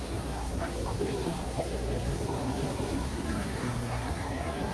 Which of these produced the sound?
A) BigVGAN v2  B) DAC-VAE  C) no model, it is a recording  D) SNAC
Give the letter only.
D